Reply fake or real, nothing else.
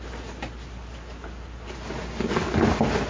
real